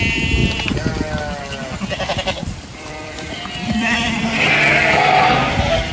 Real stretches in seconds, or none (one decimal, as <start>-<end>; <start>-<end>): 0.0-2.4